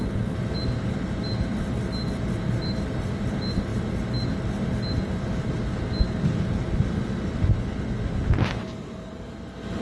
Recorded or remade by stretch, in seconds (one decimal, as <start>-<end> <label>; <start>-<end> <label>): 0.0-9.8 recorded